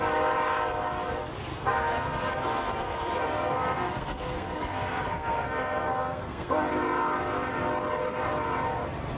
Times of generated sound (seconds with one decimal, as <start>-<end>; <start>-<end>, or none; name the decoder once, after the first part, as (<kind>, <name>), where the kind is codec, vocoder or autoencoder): 1.5-6.7 (codec, SNAC)

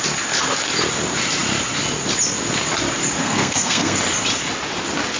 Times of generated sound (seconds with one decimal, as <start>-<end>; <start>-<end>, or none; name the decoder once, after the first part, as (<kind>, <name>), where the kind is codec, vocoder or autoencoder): 3.2-4.0 (codec, SNAC)

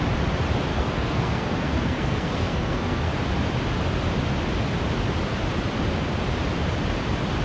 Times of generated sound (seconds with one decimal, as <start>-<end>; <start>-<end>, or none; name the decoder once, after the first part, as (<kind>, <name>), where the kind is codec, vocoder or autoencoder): 0.7-3.1 (codec, SNAC)

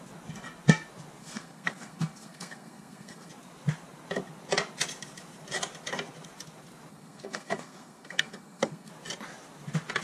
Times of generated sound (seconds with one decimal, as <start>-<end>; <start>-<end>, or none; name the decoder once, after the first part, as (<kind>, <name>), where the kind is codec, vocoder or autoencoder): 1.2-3.3 (codec, SNAC); 6.9-8.9